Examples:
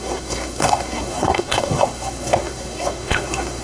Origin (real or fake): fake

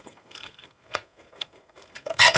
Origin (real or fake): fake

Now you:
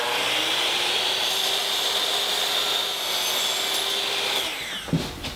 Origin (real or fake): real